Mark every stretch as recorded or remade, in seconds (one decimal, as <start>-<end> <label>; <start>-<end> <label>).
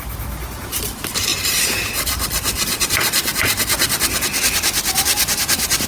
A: 0.0-1.3 recorded; 1.3-2.8 remade; 2.8-5.9 recorded